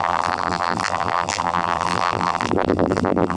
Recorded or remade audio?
remade